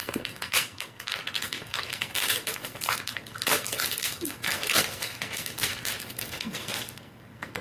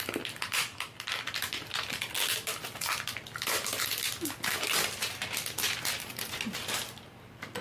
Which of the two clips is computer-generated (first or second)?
first